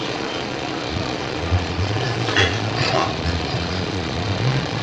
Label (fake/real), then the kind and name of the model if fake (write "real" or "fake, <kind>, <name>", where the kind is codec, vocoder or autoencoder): fake, vocoder, Vocos